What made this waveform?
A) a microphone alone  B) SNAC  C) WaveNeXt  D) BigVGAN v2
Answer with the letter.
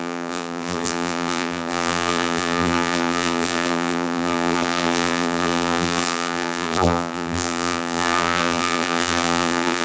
D